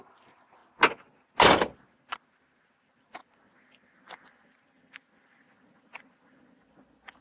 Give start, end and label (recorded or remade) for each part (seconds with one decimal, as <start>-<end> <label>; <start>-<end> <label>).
0.0-7.2 recorded